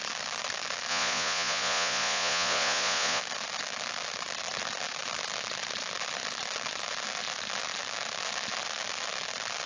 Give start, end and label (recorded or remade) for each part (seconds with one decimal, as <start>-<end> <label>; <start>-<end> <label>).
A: 0.0-0.9 recorded; 0.9-3.2 remade; 3.2-9.7 recorded

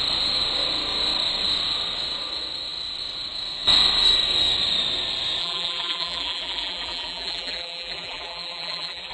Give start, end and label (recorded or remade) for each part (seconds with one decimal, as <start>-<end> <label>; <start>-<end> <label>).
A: 0.0-5.4 recorded; 5.4-9.1 remade

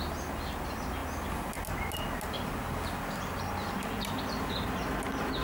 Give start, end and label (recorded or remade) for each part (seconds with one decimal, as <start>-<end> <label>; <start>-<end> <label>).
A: 0.0-5.4 recorded

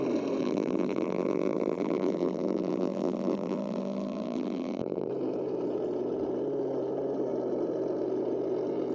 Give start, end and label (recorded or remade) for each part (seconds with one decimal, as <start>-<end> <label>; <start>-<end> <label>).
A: 0.0-0.4 recorded; 0.4-5.1 remade; 5.1-8.9 recorded

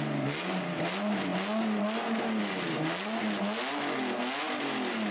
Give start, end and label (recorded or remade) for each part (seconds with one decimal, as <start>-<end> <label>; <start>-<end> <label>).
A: 0.0-5.1 recorded